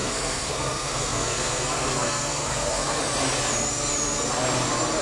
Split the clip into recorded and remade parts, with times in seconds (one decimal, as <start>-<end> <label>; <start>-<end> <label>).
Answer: 0.0-3.0 remade; 3.0-5.0 recorded